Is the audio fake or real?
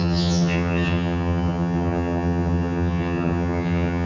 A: fake